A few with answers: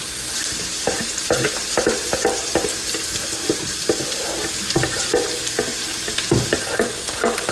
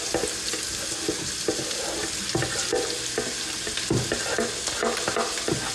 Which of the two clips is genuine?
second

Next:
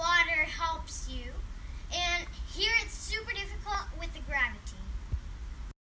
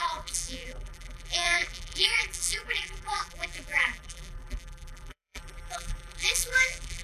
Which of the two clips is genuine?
first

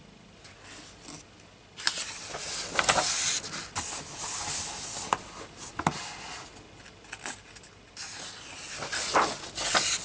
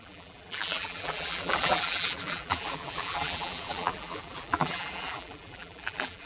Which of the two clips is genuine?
first